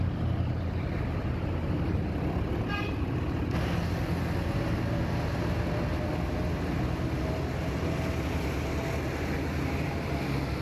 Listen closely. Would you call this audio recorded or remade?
recorded